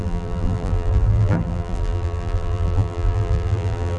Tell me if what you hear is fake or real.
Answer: fake